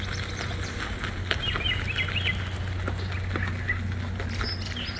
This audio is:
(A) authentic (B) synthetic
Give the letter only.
A